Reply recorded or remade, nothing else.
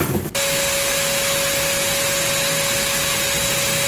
recorded